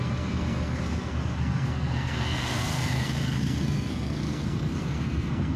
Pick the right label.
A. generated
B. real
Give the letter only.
A